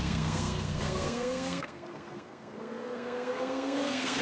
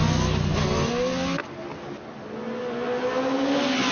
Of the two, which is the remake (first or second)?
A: first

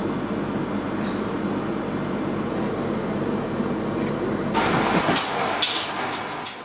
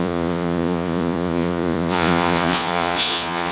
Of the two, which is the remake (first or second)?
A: second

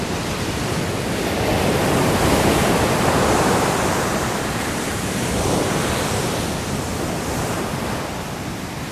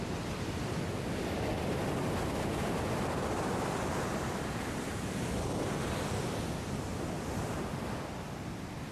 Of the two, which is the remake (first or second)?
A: first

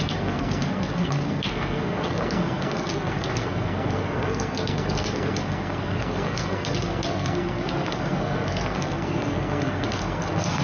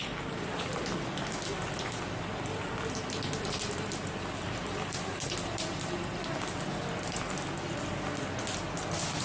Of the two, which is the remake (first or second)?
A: first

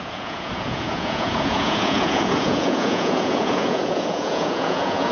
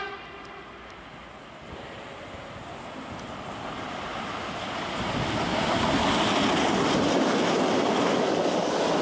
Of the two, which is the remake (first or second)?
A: first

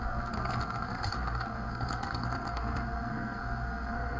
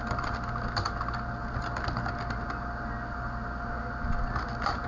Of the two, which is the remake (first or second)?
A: first